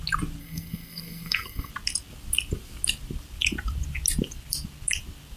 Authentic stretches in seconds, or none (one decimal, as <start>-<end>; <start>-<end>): 0.0-0.4; 1.7-5.4